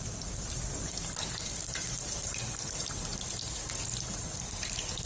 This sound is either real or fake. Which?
real